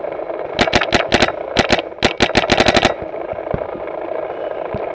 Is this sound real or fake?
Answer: real